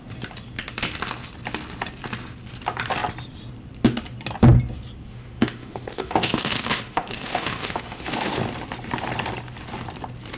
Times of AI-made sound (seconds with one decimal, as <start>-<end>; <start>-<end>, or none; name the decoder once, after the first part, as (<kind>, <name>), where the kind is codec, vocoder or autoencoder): 5.1-8.4 (autoencoder, DAC-VAE)